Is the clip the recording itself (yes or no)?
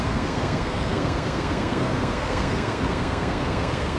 no